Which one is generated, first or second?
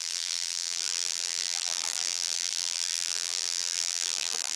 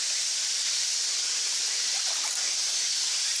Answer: first